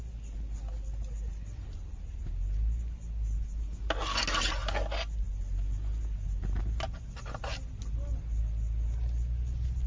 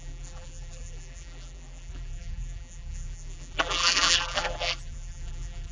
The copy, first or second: second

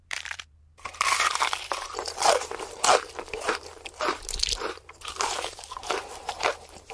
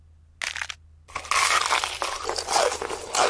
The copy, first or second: first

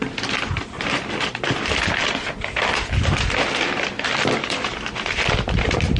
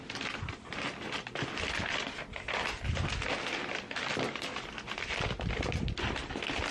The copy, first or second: first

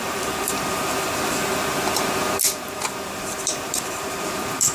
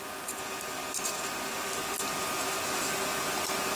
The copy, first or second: first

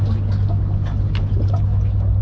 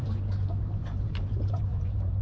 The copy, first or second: second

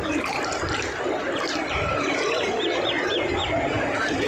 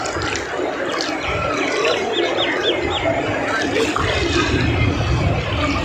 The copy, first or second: first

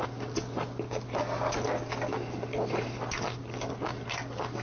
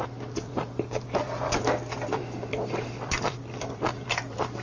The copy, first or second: second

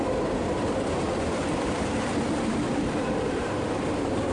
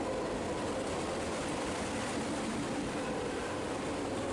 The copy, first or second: first